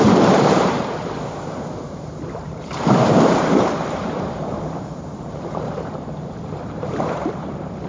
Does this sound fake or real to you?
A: fake